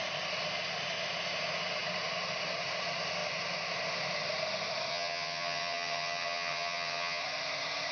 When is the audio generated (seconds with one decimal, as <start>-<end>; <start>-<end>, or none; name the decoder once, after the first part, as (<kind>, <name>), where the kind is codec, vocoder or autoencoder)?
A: 4.9-7.2 (vocoder, HiFi-GAN)